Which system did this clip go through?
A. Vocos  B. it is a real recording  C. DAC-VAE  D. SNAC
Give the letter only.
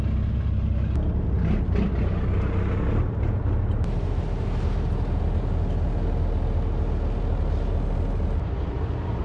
B